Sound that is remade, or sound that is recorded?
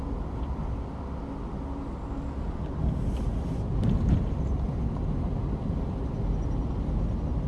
recorded